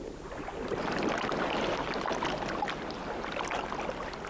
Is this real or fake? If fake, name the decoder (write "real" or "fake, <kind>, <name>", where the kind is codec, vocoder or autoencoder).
real